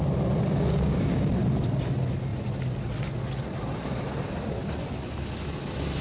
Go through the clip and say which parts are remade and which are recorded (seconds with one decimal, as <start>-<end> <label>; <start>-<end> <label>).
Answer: 0.0-0.5 recorded; 0.5-1.3 remade; 1.3-6.0 recorded